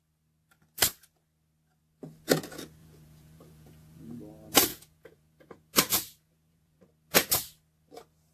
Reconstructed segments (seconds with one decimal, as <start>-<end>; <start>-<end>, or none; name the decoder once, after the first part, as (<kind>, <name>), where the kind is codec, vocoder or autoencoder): 2.8-4.2 (vocoder, Vocos); 4.7-6.8